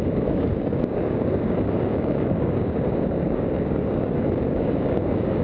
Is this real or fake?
fake